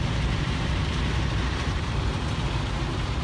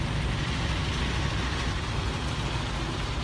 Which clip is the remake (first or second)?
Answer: first